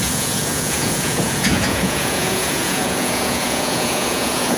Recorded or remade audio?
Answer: remade